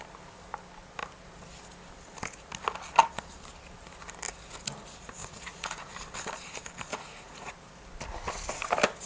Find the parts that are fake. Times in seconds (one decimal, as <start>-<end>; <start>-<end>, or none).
5.2-5.9; 6.9-7.5